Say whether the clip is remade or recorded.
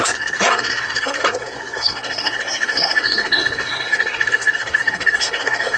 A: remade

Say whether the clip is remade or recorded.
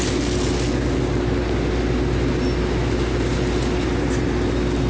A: recorded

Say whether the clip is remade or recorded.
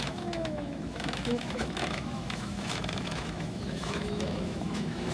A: remade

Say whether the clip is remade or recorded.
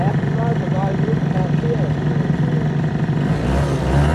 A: recorded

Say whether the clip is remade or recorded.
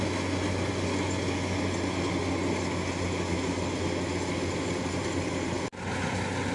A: recorded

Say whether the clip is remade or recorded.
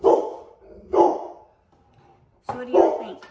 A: recorded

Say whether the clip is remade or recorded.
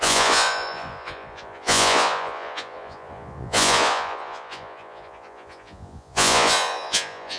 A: remade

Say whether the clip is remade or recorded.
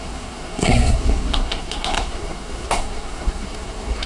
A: remade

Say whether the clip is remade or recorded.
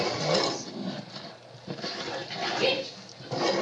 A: recorded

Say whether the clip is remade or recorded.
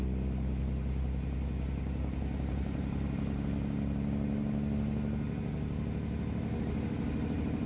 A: recorded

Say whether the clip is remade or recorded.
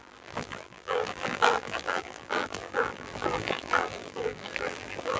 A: remade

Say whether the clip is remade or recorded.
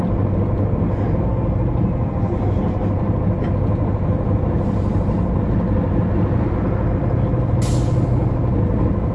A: recorded